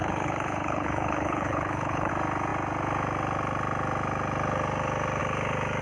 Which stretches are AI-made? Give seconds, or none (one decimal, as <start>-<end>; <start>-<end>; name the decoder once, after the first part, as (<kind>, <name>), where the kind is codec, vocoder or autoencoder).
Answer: 0.0-2.1 (codec, HILCodec)